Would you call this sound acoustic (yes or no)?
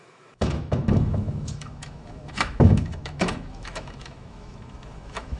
no